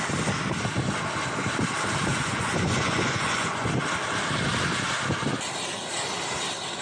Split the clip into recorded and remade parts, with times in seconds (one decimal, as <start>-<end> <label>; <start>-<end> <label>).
0.0-2.1 recorded; 2.1-3.7 remade; 3.7-6.8 recorded